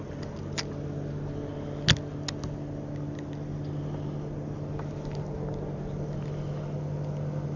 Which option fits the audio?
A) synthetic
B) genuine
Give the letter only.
B